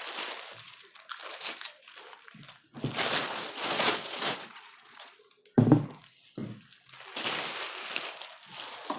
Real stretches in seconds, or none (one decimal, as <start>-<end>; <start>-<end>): 0.0-3.2; 5.2-9.0

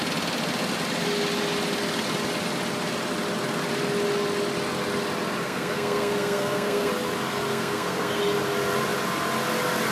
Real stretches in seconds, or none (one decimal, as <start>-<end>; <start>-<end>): 0.0-5.4; 6.9-7.5; 8.2-9.9

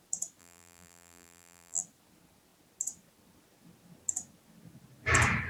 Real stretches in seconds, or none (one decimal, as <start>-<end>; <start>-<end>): 0.0-0.4; 1.8-5.5

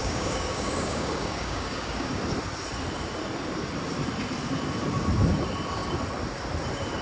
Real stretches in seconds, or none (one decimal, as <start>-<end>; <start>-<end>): 2.2-7.0

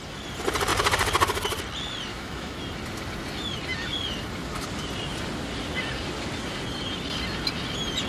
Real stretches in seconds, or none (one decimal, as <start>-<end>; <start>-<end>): 0.0-2.1; 2.6-8.1

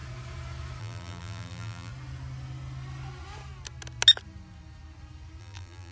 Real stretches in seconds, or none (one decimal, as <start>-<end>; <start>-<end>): 0.0-0.8; 1.9-5.4